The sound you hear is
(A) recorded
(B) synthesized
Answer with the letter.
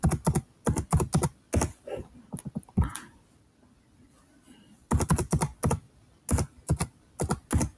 A